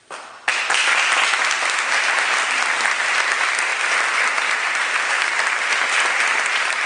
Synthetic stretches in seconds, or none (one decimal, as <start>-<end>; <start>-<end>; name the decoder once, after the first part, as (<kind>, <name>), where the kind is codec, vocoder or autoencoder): 6.3-6.9 (vocoder, BigVGAN v2)